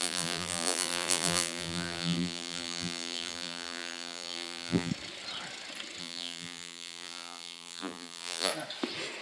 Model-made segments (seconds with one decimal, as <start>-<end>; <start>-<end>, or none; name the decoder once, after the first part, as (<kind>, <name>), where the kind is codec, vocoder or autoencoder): 0.0-4.9 (vocoder, BigVGAN v2); 6.0-8.5

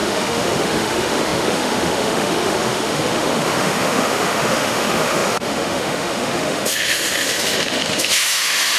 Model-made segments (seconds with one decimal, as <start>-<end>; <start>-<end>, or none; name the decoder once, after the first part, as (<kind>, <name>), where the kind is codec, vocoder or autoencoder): 0.0-8.8 (autoencoder, DAC-VAE)